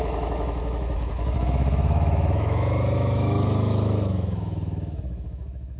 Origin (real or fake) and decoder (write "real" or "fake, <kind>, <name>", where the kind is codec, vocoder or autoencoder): fake, autoencoder, DAC-VAE